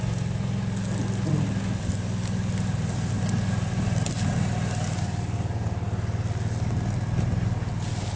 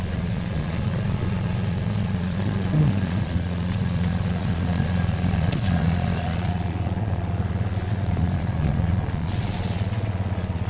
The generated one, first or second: second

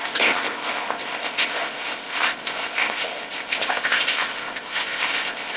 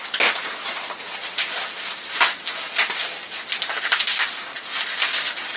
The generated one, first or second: first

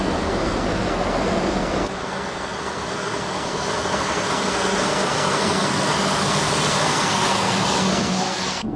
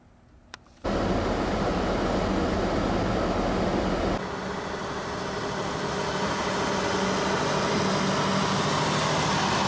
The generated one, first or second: first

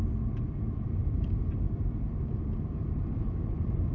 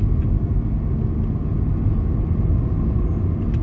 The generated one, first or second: first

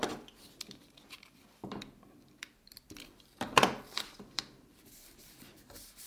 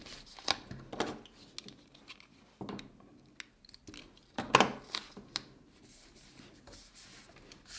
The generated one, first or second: first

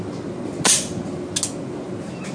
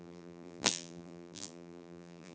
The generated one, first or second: second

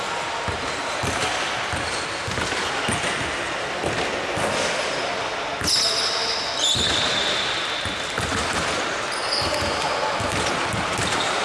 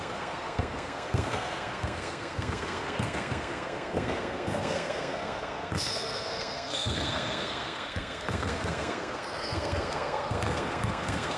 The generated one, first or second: second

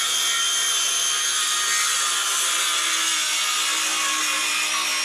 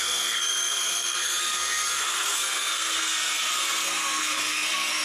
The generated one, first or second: second